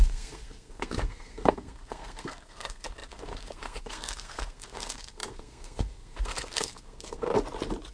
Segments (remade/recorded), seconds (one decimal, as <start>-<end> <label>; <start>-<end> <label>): 0.0-7.3 remade; 7.3-7.9 recorded